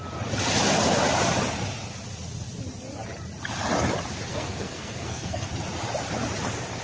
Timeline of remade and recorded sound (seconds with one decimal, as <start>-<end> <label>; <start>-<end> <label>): 0.0-4.3 recorded; 4.3-5.5 remade; 5.5-6.8 recorded